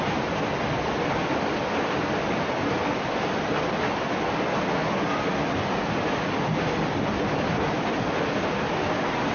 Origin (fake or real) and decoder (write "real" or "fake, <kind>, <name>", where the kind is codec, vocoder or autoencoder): real